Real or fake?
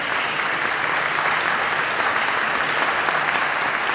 real